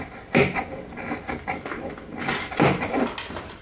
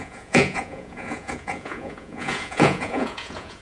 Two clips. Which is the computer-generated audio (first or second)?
second